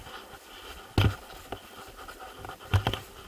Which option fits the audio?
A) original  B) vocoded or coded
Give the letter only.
A